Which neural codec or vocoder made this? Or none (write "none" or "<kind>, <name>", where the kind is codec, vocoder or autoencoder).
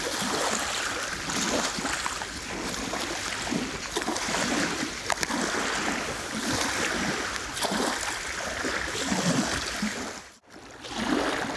none